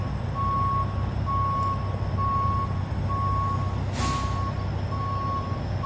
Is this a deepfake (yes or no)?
no